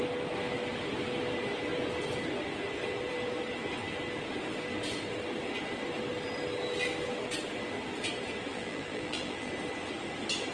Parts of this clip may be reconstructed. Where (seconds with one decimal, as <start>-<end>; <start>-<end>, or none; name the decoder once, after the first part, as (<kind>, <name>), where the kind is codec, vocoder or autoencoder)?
8.5-9.5 (vocoder, BigVGAN v2)